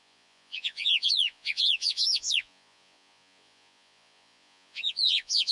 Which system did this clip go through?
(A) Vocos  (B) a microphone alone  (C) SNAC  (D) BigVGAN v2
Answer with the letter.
A